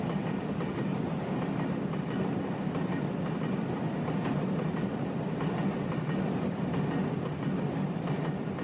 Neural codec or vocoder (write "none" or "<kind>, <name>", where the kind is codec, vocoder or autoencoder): none